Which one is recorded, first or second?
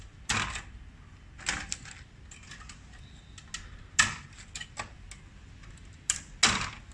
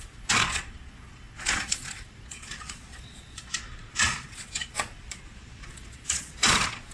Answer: first